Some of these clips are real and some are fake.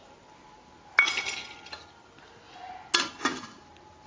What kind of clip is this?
real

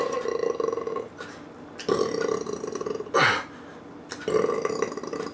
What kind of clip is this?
real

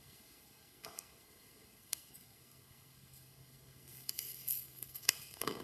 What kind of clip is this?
fake